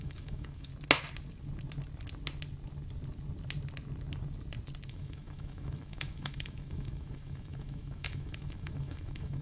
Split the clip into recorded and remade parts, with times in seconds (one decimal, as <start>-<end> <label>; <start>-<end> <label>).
0.0-0.7 remade; 0.7-4.9 recorded; 4.9-9.4 remade

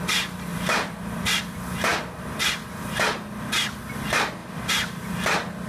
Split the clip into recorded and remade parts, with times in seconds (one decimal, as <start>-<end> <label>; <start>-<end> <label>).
0.0-0.5 recorded; 0.5-1.4 remade; 1.4-4.4 recorded; 4.4-5.0 remade; 5.0-5.7 recorded

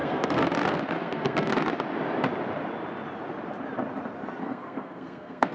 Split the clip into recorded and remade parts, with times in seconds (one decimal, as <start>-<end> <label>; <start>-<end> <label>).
0.0-1.5 remade; 1.5-4.4 recorded; 4.4-5.5 remade

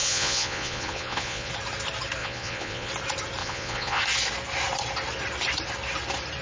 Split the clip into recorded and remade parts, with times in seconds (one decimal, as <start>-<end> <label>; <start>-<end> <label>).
0.0-1.5 remade; 1.5-2.2 recorded; 2.2-2.9 remade; 2.9-3.4 recorded; 3.4-4.0 remade; 4.0-6.4 recorded

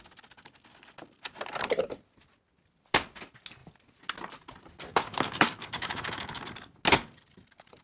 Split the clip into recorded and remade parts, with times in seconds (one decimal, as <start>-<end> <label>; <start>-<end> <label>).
0.0-4.9 recorded; 4.9-6.3 remade; 6.3-7.8 recorded